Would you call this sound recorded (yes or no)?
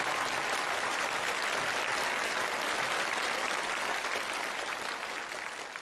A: yes